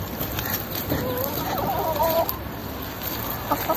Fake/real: real